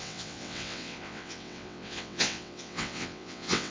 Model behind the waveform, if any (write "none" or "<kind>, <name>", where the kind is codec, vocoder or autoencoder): vocoder, WaveNeXt